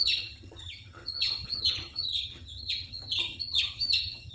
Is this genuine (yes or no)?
no